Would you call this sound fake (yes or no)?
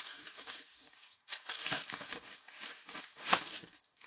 yes